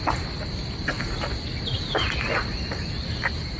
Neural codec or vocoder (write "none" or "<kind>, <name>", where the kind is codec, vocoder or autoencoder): none